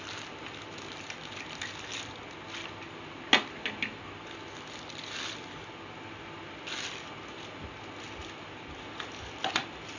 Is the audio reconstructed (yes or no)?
no